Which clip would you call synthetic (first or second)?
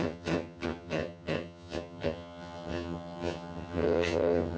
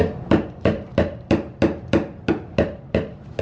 first